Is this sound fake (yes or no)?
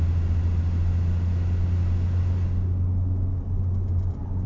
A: no